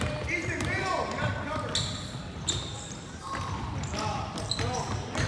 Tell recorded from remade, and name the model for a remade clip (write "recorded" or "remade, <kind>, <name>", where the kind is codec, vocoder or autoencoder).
recorded